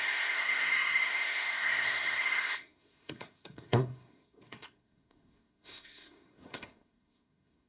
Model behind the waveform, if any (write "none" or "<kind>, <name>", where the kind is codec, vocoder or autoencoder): codec, SNAC